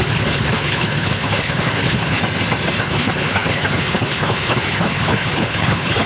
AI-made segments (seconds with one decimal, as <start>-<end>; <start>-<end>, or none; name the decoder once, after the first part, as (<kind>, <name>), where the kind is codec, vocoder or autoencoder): 0.0-2.2 (codec, HILCodec); 2.8-6.1